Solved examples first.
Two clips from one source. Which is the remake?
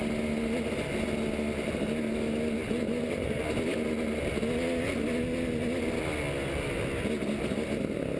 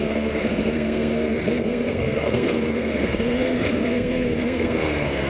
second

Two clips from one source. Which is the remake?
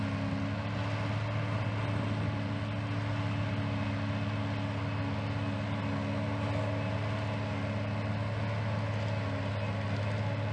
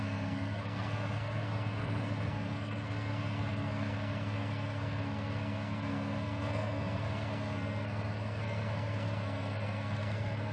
second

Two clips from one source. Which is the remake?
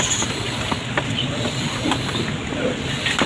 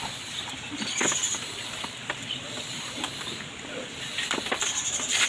second